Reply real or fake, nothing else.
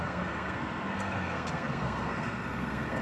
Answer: fake